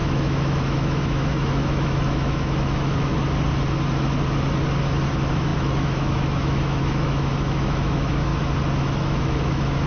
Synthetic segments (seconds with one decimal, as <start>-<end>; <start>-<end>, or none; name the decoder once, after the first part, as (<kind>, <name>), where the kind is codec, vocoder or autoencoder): 0.0-3.1 (autoencoder, DAC-VAE); 5.1-8.3; 8.8-9.9